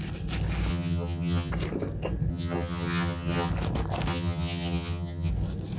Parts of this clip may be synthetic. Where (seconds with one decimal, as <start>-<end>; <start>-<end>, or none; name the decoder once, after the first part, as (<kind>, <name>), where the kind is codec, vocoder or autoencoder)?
0.7-1.5 (vocoder, HiFi-GAN); 2.3-3.5; 4.1-5.3